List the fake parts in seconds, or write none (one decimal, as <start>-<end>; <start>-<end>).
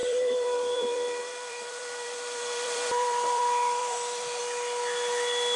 0.0-3.4; 3.8-4.4